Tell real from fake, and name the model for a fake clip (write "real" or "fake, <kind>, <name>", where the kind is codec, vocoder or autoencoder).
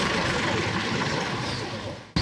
real